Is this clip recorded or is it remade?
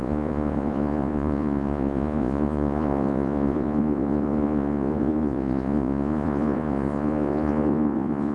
remade